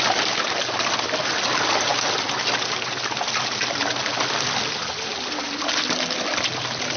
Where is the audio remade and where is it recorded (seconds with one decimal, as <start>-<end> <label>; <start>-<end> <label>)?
0.0-7.0 recorded